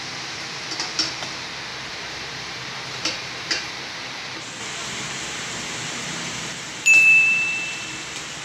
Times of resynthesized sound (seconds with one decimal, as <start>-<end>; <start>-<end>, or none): 1.7-4.2; 4.8-8.4